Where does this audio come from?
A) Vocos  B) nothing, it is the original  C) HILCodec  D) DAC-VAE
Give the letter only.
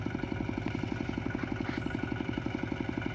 B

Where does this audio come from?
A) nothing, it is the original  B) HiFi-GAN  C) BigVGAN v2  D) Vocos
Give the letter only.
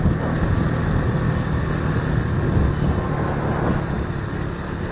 A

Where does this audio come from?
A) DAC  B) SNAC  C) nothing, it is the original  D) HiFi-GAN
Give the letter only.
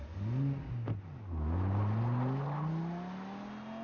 C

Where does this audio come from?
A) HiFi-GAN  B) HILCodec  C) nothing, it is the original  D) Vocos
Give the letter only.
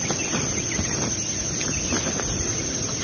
C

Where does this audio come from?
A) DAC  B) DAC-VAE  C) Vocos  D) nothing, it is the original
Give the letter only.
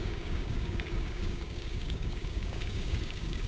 A